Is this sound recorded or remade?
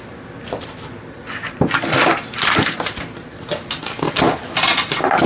recorded